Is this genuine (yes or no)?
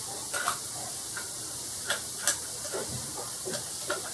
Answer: yes